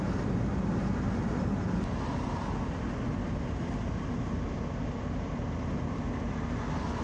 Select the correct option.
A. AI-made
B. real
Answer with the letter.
B